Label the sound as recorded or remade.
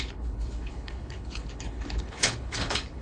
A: remade